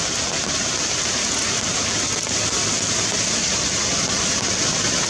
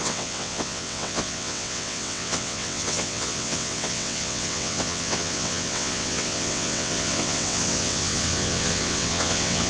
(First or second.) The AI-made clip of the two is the second